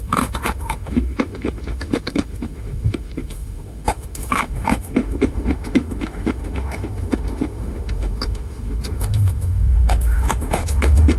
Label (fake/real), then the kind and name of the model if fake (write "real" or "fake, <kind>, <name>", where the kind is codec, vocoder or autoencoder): fake, autoencoder, DAC-VAE